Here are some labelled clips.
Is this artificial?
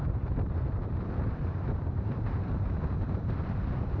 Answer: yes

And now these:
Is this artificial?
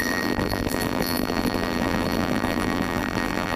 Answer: yes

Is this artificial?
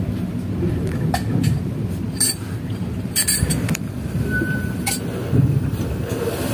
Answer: yes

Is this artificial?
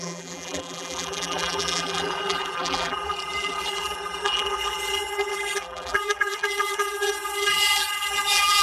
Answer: yes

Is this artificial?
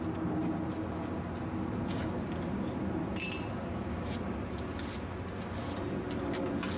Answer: no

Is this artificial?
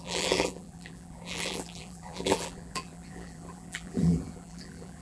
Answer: yes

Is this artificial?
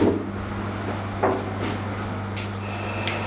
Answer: no